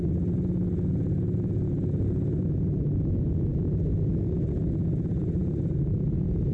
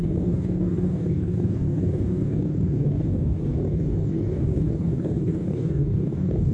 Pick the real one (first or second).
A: first